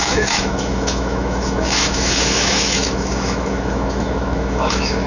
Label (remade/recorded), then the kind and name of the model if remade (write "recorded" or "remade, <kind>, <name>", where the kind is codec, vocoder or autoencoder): remade, autoencoder, DAC-VAE